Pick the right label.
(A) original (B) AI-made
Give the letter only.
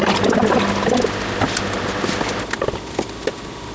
A